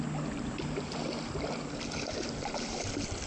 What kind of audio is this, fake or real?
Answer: real